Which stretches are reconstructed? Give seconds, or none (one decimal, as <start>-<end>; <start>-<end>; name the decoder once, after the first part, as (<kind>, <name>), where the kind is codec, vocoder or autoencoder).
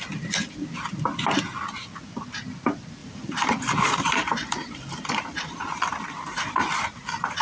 3.0-7.4 (vocoder, BigVGAN v2)